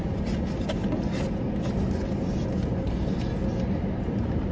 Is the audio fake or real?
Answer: real